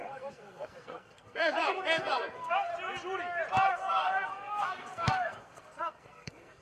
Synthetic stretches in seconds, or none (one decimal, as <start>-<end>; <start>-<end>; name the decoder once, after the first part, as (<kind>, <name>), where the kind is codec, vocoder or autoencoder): 0.0-2.7 (codec, SNAC); 3.7-6.6

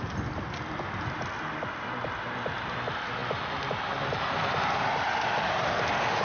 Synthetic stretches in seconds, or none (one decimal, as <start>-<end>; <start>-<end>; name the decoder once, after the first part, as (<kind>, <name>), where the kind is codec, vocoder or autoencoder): none

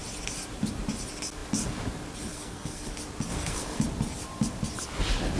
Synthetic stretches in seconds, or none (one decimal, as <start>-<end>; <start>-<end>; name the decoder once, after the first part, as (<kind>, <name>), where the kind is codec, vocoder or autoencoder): 2.3-2.9 (codec, SNAC); 3.3-3.8

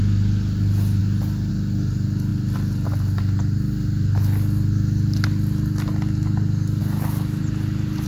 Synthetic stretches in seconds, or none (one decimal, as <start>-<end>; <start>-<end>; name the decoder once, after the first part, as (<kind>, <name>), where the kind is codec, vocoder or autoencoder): none

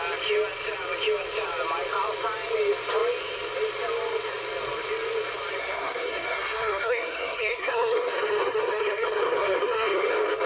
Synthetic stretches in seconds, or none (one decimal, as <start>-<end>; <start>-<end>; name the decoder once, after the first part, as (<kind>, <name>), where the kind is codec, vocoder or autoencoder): 5.6-10.1 (codec, SNAC)

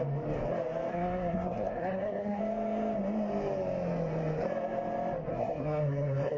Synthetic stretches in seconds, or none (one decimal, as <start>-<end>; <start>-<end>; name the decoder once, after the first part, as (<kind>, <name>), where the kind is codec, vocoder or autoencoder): 0.9-2.4 (codec, SNAC); 5.3-6.4

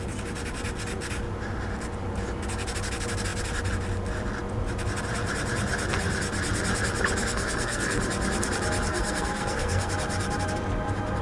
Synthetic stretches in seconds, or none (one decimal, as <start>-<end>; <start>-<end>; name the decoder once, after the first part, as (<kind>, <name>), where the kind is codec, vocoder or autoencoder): 7.2-8.0 (codec, SNAC); 8.9-9.9

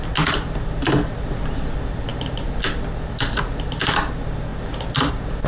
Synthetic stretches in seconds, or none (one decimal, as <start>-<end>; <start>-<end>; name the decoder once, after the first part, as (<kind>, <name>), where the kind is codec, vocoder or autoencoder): none